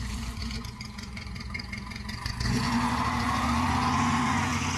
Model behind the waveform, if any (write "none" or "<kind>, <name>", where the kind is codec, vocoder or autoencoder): vocoder, Vocos